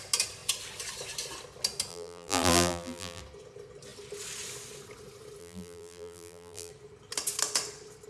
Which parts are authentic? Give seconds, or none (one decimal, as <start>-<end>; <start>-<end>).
0.0-1.9; 3.2-5.4; 6.7-8.1